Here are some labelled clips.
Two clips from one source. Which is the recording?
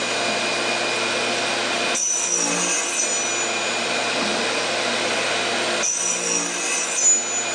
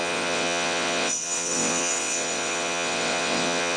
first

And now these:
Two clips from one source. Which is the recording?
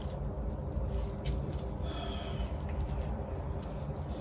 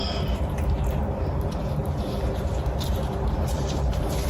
first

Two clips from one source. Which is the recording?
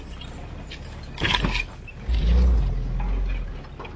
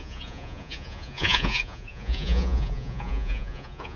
first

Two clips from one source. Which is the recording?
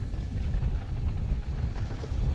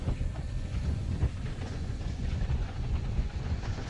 first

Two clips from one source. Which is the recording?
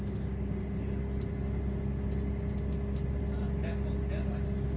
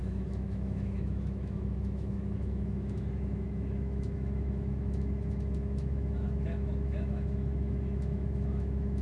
first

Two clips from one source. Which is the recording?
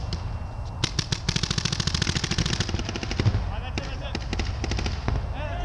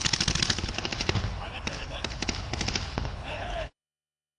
first